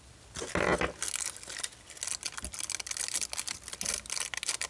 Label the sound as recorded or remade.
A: recorded